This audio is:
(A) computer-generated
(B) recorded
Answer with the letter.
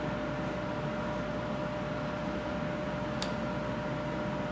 B